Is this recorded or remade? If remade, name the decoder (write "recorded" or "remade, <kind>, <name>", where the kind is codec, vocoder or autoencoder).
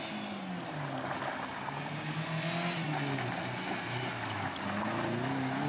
recorded